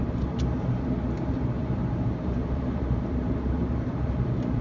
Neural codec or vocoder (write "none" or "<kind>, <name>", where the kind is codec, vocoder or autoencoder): vocoder, BigVGAN v2